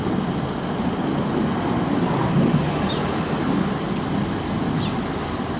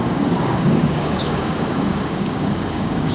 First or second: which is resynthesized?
second